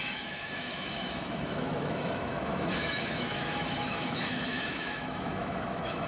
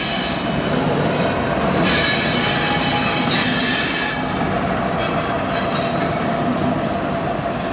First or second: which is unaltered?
second